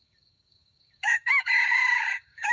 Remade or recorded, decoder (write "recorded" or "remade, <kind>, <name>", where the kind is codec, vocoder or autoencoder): remade, codec, DAC